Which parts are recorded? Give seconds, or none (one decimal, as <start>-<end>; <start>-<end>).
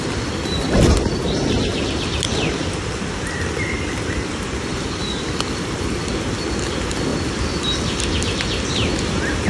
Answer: 0.0-9.5